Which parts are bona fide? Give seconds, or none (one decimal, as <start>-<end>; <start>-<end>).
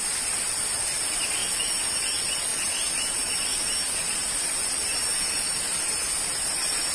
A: 0.0-1.4; 2.0-2.5; 3.3-5.1; 5.9-6.9